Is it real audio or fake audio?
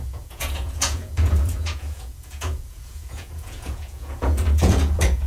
fake